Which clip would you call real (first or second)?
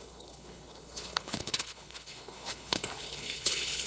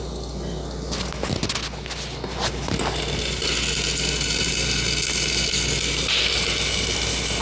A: second